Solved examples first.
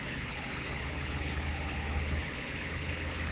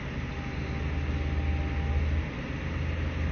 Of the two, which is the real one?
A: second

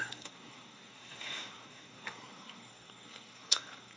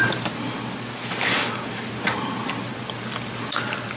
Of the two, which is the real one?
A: second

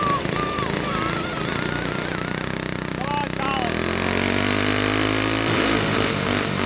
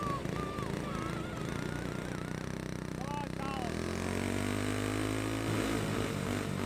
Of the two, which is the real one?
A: second